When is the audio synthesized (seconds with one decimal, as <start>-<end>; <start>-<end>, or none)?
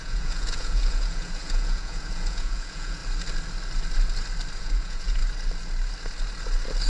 0.0-3.0; 4.6-5.2